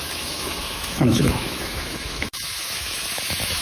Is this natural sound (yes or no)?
no